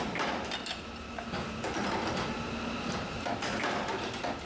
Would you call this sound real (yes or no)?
yes